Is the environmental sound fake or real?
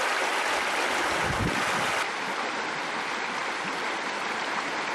real